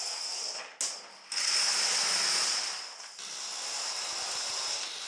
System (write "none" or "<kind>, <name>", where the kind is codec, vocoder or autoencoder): none